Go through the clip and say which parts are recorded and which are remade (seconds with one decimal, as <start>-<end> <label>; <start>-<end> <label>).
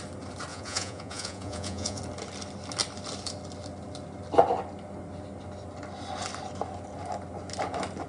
0.0-0.5 recorded; 0.5-2.0 remade; 2.0-8.1 recorded